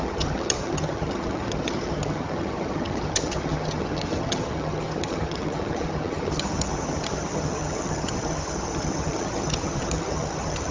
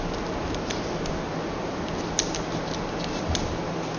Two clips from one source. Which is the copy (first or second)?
first